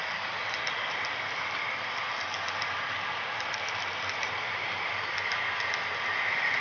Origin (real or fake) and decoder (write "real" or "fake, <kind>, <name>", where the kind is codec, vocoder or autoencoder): real